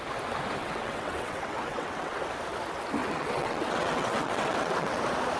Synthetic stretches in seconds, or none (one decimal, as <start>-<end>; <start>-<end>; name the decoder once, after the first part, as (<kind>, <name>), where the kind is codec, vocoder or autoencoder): 0.6-2.2 (vocoder, WaveNeXt); 3.0-5.0